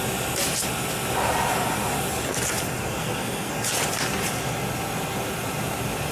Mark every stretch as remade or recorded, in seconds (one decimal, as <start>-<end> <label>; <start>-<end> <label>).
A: 0.0-2.8 recorded; 2.8-3.5 remade; 3.5-6.1 recorded